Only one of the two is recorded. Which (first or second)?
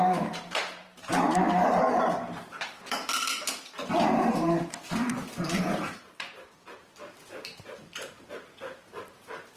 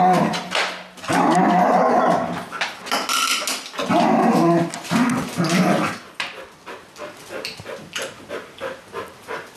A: second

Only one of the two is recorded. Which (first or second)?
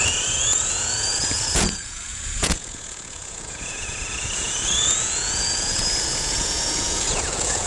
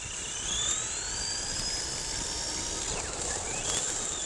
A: second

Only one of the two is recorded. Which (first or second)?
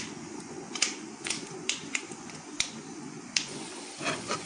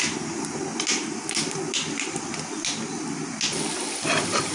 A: second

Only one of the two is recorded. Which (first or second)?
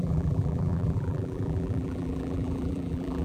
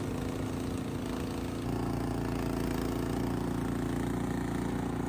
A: second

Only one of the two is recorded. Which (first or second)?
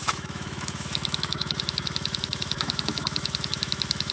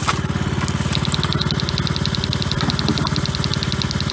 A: second